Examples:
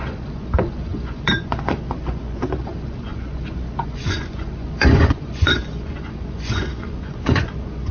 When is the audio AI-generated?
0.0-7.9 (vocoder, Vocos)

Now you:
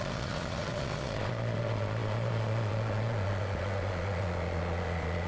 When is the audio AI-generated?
0.0-5.3 (vocoder, Vocos)

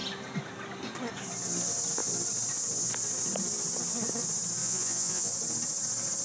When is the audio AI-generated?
4.6-5.3 (vocoder, Vocos)